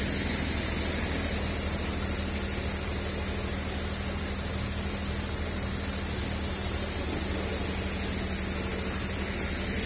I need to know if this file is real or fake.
real